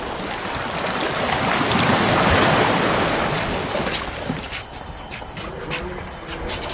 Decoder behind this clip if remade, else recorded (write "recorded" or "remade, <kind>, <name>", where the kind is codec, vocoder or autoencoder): recorded